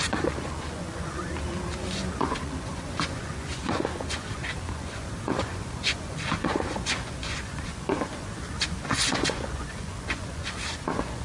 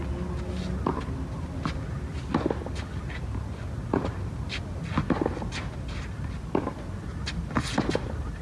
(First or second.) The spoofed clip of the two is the first